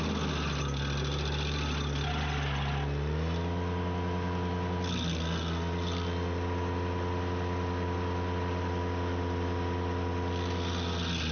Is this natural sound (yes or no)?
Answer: yes